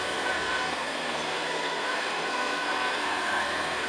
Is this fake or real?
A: fake